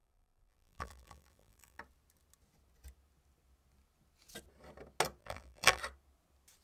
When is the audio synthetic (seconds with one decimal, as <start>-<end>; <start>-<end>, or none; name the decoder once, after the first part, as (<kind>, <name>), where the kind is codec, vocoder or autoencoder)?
0.0-1.8 (vocoder, BigVGAN v2); 5.2-5.8